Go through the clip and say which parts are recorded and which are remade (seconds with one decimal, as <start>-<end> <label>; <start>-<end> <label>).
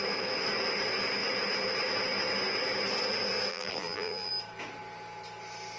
0.0-3.5 recorded; 3.5-4.3 remade; 4.3-5.8 recorded